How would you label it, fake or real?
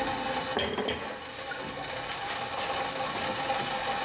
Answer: real